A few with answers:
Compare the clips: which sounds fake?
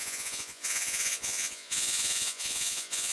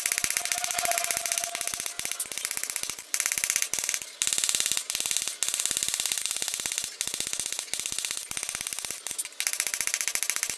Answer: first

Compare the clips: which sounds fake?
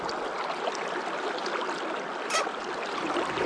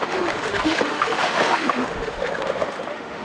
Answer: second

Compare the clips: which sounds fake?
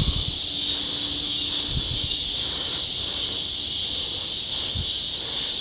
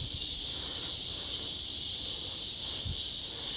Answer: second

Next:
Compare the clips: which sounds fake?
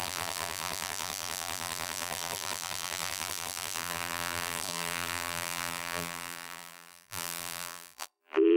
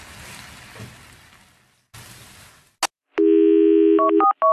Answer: first